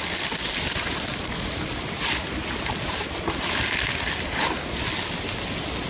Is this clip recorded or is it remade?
recorded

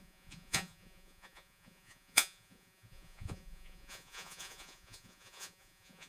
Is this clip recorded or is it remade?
remade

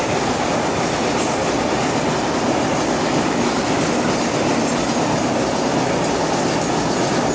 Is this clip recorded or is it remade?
recorded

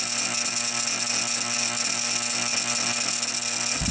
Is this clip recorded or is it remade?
recorded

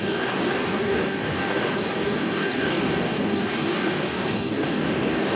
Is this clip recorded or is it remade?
remade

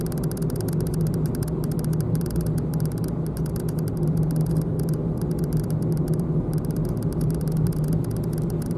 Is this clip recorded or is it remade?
recorded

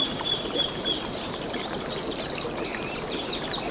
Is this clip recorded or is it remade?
recorded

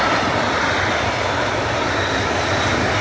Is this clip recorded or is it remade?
recorded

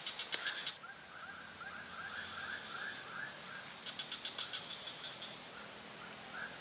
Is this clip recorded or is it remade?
recorded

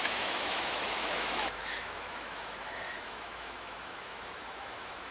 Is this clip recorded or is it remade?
remade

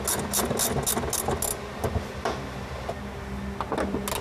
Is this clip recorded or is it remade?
recorded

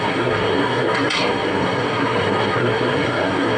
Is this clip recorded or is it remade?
remade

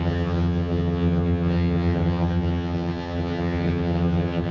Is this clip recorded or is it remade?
remade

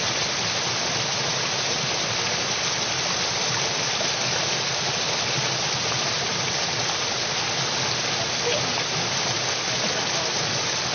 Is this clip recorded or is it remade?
recorded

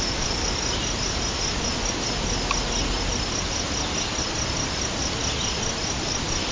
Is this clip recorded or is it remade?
recorded